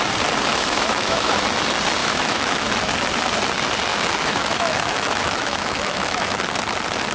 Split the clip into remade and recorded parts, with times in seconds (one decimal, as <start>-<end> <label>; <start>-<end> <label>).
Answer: 0.0-0.5 recorded; 0.5-1.4 remade; 1.4-2.0 recorded; 2.0-2.7 remade; 2.7-3.9 recorded; 3.9-6.4 remade; 6.4-7.1 recorded